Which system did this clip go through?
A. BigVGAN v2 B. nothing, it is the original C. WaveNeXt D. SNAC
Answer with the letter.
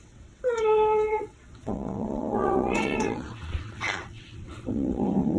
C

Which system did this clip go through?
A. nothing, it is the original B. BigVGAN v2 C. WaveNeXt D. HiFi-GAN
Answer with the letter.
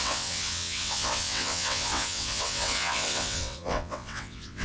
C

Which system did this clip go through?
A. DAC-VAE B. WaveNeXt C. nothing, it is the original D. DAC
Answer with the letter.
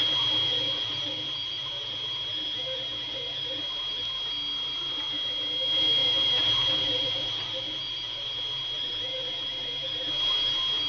C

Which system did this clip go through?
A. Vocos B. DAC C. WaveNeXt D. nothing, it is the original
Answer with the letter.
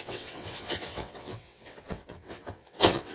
C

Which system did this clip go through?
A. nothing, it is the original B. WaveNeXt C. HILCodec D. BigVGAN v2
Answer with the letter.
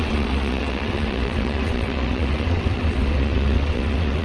B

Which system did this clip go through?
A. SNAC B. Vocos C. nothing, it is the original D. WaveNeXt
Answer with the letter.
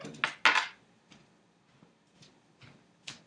C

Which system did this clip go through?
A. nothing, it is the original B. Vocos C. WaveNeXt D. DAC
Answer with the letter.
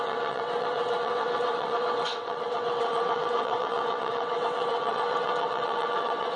C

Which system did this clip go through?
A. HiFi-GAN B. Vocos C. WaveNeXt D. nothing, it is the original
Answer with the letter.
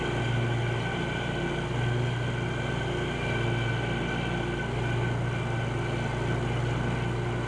D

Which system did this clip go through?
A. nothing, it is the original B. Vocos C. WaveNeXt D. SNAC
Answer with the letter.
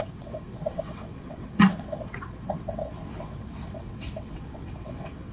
C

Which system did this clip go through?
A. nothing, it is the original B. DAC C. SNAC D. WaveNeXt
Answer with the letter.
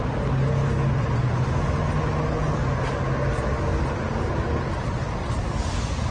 A